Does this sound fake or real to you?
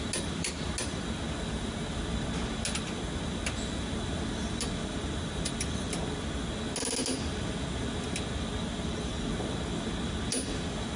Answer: real